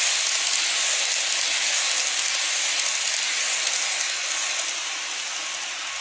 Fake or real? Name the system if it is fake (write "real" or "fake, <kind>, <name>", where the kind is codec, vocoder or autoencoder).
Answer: real